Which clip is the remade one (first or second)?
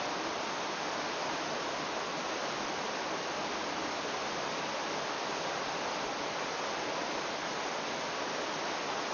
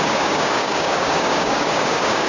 second